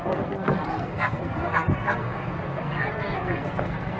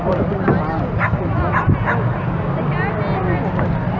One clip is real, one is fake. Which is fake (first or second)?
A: first